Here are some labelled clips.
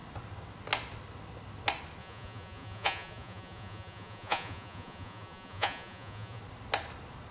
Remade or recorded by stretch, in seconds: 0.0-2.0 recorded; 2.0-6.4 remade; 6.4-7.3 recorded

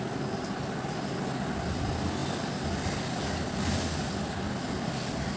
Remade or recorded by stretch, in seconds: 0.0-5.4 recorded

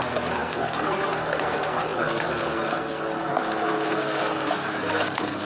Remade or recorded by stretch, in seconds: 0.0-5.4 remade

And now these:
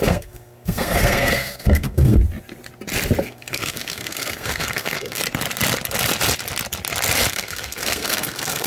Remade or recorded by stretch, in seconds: 0.0-2.2 remade; 2.2-3.2 recorded; 3.2-5.2 remade; 5.2-7.3 recorded; 7.3-8.7 remade

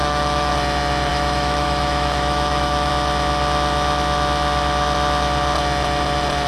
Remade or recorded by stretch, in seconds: 0.0-0.5 remade; 0.5-1.1 recorded; 1.1-2.9 remade; 2.9-6.5 recorded

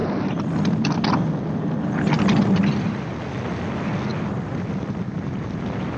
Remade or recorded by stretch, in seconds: 0.0-6.0 recorded

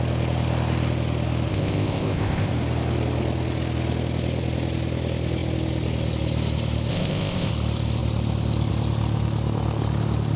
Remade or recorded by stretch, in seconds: 0.0-1.5 recorded; 1.5-2.5 remade; 2.5-6.9 recorded; 6.9-7.5 remade; 7.5-10.4 recorded

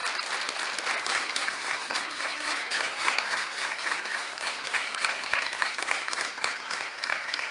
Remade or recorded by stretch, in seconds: 0.0-1.0 recorded; 1.0-7.5 remade